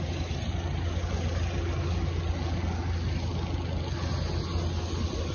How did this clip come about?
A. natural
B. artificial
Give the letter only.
A